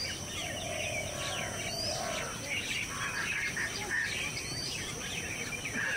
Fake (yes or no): no